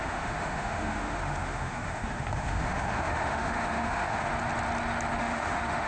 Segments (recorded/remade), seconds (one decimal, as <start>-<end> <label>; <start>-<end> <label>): 0.0-4.3 remade; 4.3-5.2 recorded; 5.2-5.9 remade